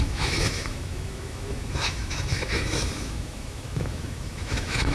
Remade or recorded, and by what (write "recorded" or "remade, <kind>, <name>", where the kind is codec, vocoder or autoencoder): remade, autoencoder, DAC-VAE